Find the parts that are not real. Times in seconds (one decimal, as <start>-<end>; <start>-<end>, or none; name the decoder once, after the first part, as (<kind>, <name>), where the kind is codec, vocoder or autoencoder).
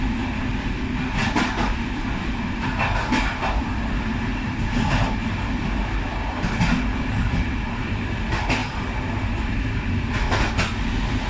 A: none